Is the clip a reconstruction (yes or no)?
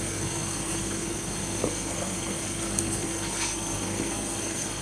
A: yes